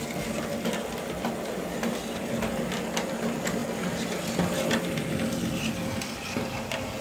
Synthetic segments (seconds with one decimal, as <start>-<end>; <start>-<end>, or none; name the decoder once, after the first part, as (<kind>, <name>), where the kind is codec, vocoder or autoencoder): none